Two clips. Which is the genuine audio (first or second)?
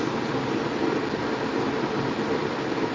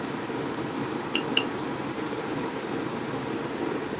first